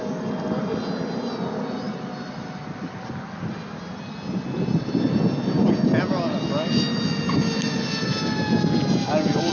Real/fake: real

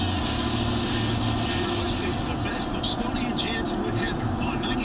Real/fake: real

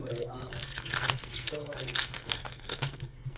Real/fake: fake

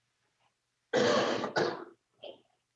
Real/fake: real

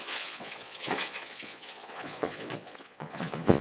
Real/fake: fake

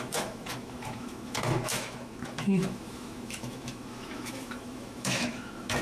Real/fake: fake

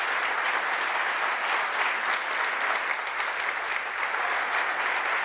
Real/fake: real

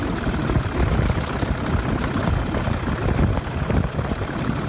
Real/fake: real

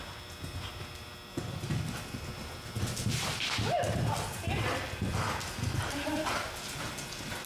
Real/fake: real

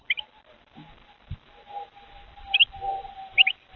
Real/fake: real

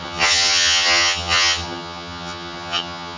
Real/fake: fake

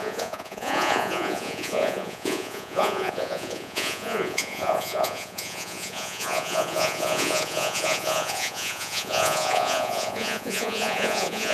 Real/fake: fake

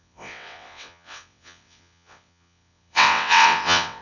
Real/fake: fake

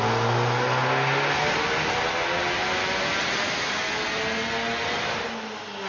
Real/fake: real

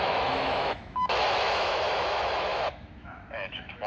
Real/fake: fake